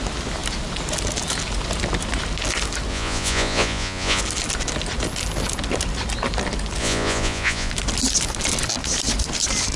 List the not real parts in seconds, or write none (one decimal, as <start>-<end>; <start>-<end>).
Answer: 2.9-4.2; 6.8-7.7